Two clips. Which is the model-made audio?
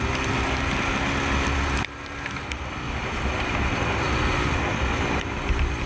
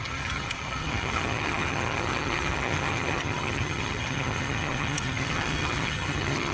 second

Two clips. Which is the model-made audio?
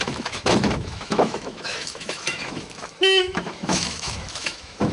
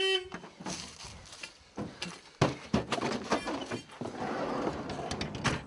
first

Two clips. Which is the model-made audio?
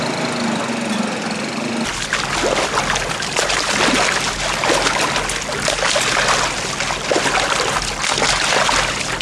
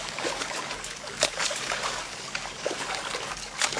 second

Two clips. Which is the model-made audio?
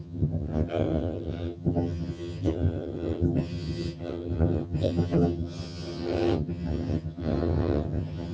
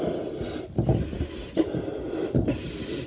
first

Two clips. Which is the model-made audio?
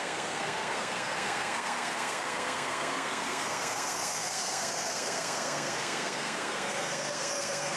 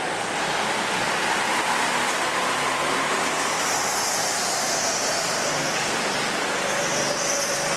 first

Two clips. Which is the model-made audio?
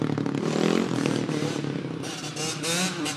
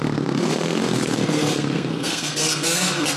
second